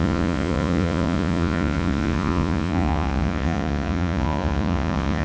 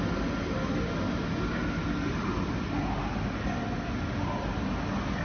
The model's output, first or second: first